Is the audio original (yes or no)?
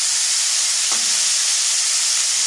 no